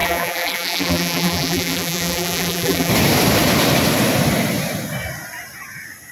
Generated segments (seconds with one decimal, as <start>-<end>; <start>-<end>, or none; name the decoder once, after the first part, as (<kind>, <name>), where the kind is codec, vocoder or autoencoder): 0.0-2.9 (vocoder, BigVGAN v2)